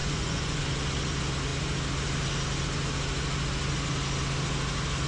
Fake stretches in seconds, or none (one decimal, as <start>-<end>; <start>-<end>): 0.0-0.6